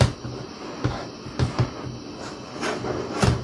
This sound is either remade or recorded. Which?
recorded